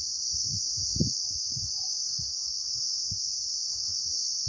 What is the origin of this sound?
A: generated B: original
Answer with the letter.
A